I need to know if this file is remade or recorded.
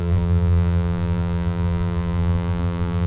remade